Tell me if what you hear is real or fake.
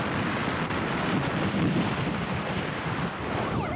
fake